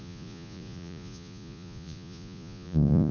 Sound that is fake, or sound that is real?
fake